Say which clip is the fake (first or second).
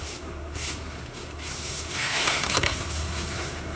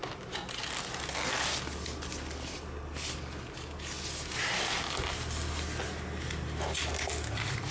first